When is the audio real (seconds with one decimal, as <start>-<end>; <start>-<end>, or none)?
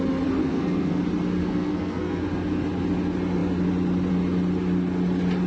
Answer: 0.0-0.4; 1.0-1.4; 2.2-5.5